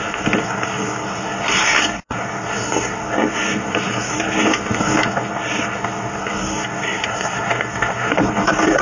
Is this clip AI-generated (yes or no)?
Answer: yes